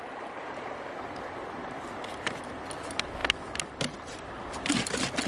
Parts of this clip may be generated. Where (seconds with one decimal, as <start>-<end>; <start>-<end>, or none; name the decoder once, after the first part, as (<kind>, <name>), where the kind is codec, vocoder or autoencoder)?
none